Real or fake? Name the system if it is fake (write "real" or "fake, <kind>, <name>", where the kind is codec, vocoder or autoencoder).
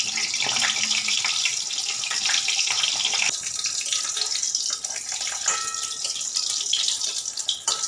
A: real